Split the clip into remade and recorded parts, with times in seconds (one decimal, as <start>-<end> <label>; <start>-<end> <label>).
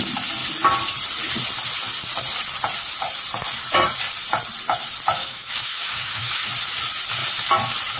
0.0-5.2 recorded; 5.2-6.5 remade; 6.5-8.0 recorded